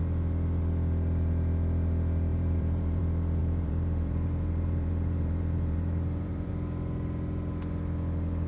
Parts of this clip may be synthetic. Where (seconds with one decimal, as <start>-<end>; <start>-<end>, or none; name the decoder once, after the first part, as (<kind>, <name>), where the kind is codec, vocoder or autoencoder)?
2.3-3.0 (vocoder, BigVGAN v2); 3.4-6.5